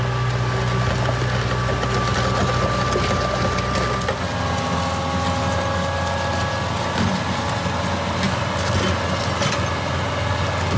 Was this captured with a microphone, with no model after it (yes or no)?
yes